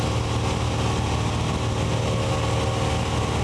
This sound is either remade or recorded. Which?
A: recorded